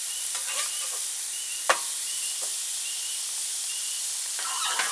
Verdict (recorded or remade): recorded